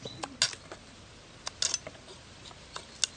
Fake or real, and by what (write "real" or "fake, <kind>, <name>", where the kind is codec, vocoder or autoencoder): real